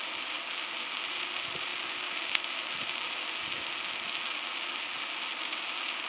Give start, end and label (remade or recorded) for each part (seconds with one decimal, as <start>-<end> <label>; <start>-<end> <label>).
0.0-6.1 recorded